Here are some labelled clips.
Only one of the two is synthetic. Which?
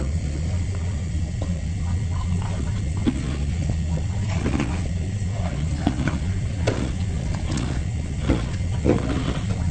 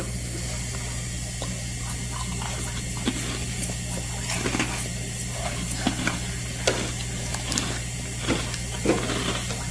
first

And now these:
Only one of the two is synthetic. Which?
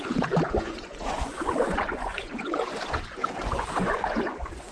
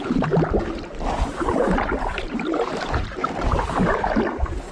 first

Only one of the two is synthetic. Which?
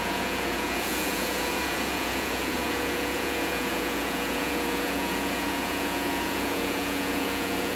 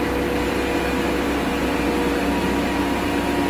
first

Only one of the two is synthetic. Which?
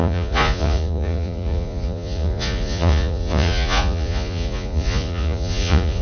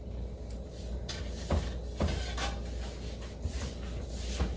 first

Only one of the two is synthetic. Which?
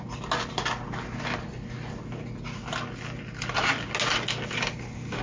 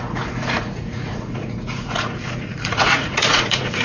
second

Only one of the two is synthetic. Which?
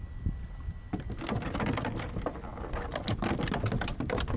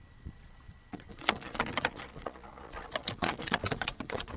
second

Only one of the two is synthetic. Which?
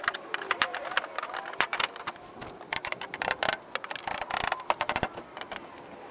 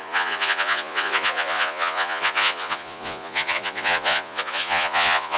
second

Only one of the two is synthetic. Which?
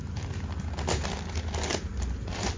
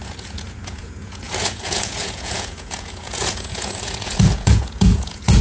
second